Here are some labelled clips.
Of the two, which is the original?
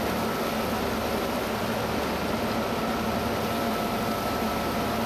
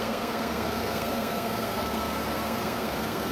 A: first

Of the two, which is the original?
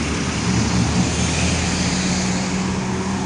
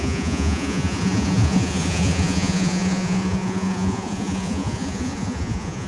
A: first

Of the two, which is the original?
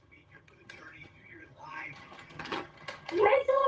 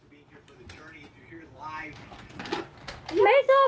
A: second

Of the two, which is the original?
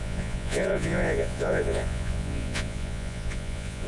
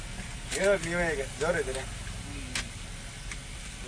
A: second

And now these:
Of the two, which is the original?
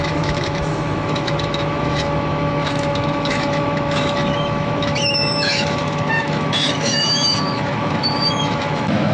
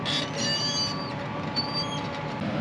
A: second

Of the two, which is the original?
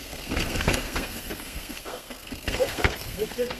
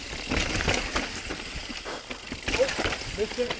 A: second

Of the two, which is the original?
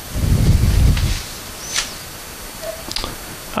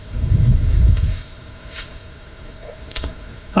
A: first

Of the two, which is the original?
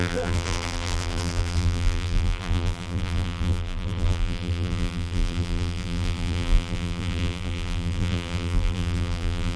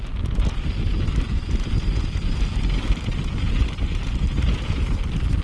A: second